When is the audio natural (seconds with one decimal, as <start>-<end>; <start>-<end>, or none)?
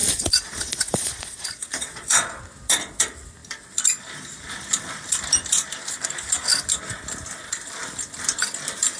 2.4-9.0